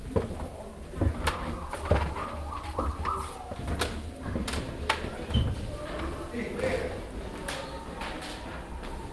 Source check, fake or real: real